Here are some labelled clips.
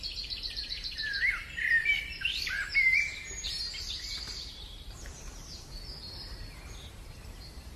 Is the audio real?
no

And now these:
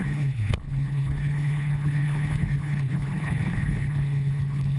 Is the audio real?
no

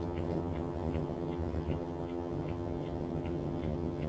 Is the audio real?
no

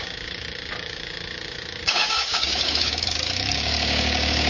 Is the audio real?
no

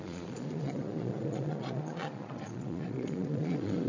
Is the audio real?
no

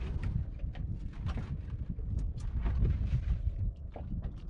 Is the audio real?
yes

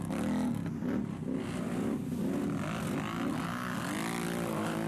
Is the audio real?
yes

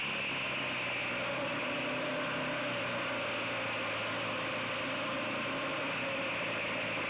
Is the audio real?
yes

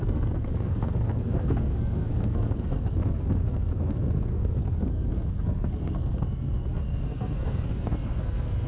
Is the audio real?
no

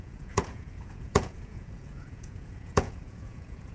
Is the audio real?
no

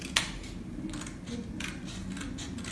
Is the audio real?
yes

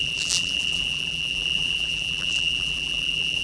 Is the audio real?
no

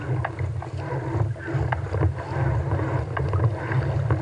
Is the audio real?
yes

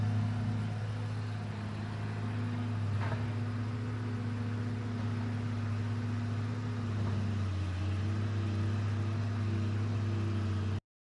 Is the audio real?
yes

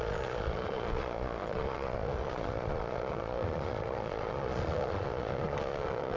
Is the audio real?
no